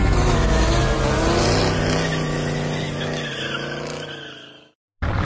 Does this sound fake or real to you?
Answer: real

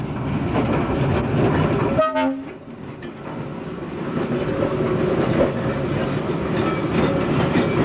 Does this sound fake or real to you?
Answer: real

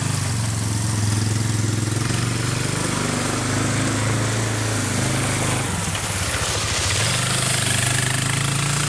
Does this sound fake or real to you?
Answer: real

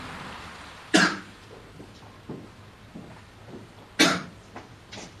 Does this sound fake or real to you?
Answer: real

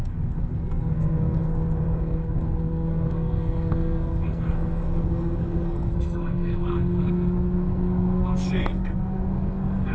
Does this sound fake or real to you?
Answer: fake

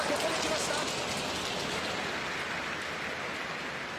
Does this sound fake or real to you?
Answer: fake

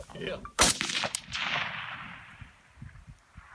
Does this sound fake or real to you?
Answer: real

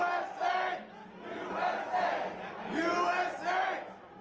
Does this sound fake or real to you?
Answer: real